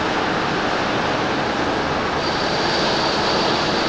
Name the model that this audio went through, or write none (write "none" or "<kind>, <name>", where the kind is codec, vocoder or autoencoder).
none